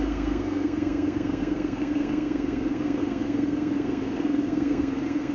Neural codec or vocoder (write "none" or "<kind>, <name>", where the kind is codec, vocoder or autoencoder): codec, SNAC